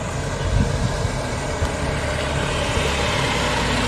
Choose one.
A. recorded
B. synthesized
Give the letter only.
A